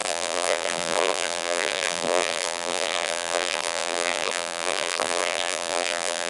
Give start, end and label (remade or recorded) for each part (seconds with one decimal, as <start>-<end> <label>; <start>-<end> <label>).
0.0-6.3 remade